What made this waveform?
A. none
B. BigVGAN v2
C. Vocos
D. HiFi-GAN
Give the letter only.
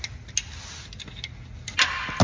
A